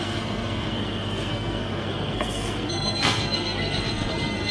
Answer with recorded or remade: remade